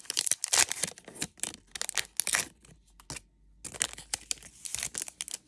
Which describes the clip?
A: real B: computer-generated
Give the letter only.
A